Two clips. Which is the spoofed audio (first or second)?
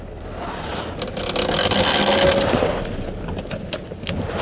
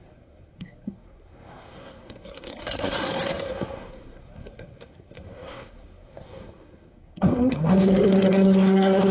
second